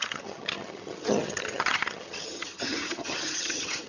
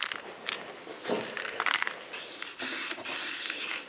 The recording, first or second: second